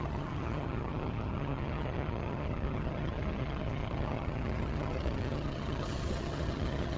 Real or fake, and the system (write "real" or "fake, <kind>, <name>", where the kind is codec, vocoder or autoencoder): fake, vocoder, HiFi-GAN